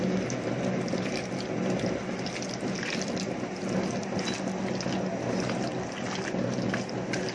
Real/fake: real